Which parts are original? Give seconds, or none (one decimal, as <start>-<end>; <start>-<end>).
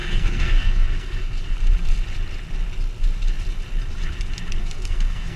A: 1.5-4.6